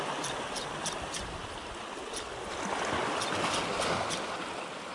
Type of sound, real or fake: real